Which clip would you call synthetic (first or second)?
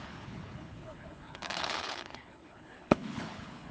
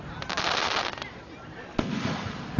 first